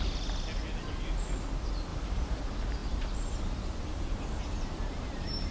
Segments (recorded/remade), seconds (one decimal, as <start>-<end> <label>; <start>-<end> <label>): 0.0-1.9 recorded; 1.9-2.4 remade; 2.4-2.8 recorded; 2.8-5.5 remade